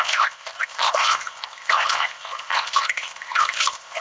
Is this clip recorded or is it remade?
remade